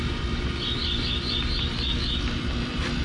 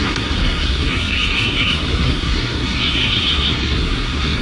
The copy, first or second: second